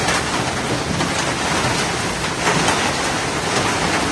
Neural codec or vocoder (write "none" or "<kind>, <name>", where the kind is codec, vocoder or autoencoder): none